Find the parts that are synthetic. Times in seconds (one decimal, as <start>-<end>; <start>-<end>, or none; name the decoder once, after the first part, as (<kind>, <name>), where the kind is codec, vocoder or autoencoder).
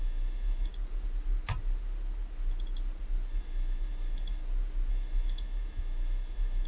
0.0-0.7 (autoencoder, DAC-VAE); 3.3-4.4; 4.9-6.7